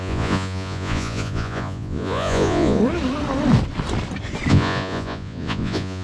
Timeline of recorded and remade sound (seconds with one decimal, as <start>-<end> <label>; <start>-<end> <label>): 0.0-2.8 remade; 2.8-4.5 recorded; 4.5-6.0 remade